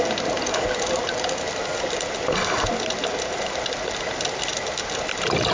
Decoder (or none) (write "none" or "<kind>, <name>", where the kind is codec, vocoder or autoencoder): none